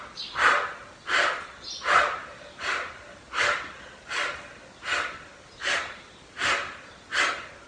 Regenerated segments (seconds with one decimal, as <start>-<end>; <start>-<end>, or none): none